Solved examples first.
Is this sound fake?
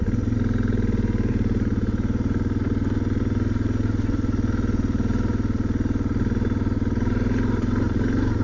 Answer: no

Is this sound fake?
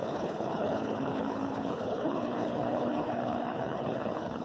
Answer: yes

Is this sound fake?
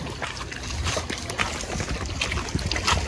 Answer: no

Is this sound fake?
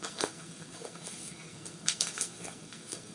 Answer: yes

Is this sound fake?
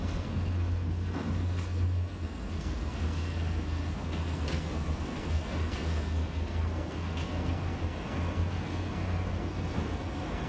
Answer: yes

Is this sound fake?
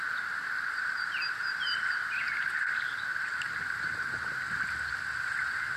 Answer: no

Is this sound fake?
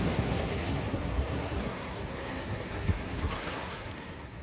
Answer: yes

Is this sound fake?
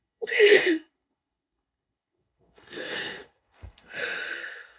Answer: yes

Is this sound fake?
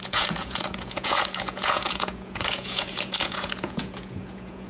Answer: yes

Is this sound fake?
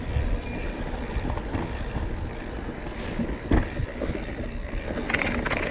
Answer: no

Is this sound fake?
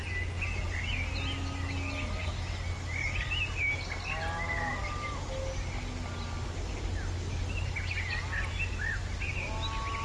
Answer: no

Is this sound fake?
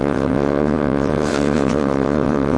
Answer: yes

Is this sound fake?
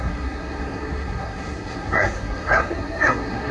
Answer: yes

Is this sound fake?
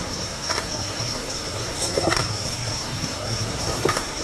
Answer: yes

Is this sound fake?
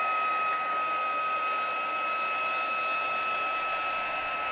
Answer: no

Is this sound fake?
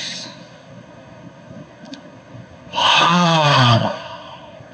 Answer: yes